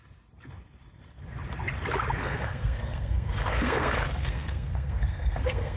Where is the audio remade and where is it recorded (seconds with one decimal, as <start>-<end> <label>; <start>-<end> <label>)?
0.0-2.2 recorded; 2.2-5.8 remade